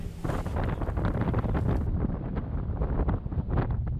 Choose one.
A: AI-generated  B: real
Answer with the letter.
B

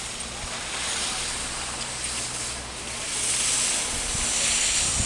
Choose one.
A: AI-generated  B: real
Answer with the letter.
B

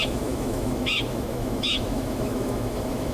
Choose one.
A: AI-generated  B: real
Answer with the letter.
A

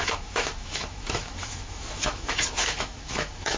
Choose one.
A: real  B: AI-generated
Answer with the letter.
B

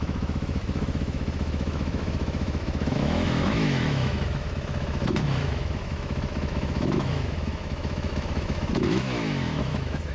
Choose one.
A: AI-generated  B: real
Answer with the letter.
A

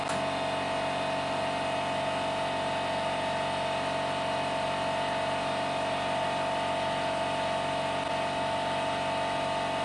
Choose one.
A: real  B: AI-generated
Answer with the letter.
A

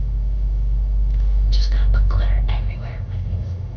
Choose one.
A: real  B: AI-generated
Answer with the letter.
B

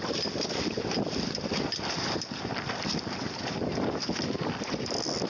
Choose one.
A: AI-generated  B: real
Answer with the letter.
B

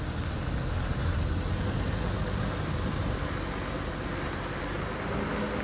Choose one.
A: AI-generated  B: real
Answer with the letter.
B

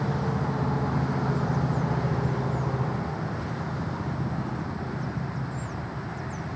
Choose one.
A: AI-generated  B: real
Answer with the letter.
B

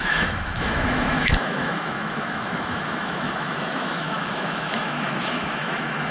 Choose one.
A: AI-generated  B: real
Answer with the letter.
A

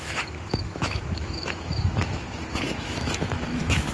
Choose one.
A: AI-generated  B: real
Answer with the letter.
A